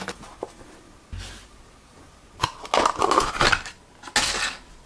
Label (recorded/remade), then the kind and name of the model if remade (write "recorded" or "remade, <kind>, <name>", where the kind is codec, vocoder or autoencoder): recorded